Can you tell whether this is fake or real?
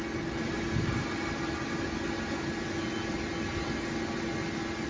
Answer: real